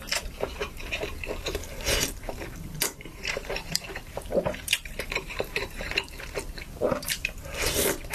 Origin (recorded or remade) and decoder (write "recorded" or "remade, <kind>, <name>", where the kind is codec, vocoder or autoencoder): remade, vocoder, BigVGAN v2